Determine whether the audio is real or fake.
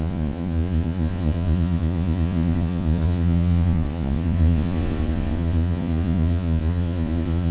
fake